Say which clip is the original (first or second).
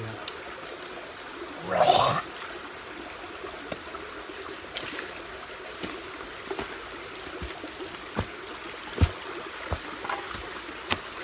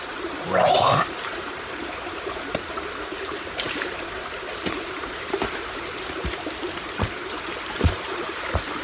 first